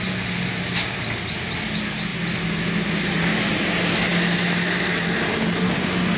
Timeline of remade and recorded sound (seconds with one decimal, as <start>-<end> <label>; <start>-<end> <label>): 0.0-6.2 recorded